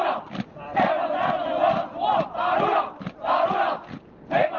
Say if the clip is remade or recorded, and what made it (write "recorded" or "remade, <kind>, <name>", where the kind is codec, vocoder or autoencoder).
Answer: recorded